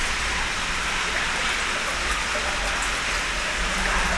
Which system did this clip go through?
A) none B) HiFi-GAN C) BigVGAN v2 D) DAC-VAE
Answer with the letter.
A